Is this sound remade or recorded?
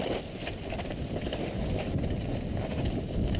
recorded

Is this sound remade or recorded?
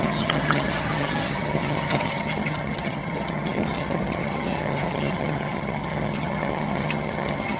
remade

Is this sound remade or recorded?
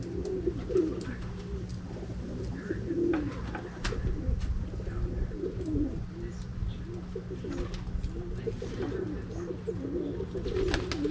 recorded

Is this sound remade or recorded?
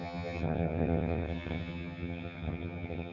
remade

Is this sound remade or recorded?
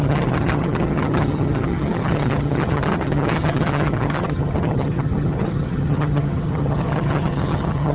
remade